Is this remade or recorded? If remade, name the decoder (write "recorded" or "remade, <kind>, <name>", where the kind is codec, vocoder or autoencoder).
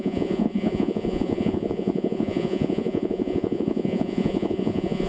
remade, vocoder, Vocos